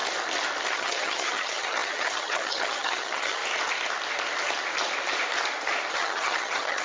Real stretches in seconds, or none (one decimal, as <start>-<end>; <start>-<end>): 0.0-0.7; 3.4-5.9